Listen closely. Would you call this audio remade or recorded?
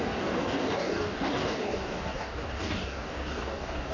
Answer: remade